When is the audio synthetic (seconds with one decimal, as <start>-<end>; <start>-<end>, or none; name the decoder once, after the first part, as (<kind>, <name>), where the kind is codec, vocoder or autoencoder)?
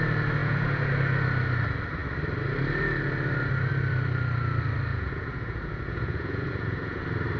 0.4-0.9 (vocoder, Vocos); 4.9-7.0